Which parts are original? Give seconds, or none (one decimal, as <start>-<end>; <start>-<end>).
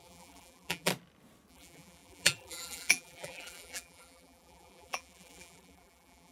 0.9-1.5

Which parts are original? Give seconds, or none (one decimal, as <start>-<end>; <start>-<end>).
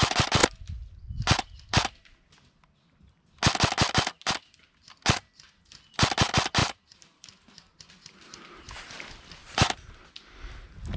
0.0-6.6; 7.8-9.4; 10.1-11.0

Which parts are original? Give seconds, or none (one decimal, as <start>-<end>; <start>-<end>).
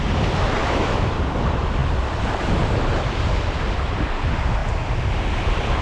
0.0-0.6; 1.1-5.8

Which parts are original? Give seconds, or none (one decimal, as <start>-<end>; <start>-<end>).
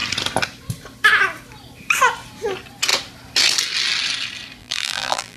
0.0-4.6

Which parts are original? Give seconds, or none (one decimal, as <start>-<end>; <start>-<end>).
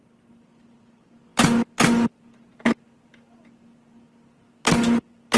0.0-5.4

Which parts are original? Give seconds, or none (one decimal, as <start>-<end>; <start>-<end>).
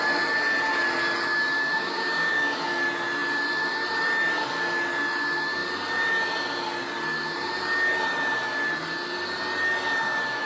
0.0-1.8; 2.6-10.5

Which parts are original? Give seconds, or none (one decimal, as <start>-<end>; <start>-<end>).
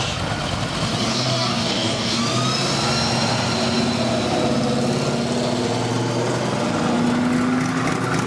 0.0-1.1; 2.2-8.3